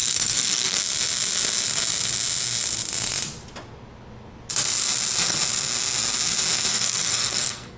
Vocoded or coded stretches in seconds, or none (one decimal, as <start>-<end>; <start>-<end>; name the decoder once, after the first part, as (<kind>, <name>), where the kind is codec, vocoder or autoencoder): 0.0-0.8 (codec, SNAC); 6.7-7.8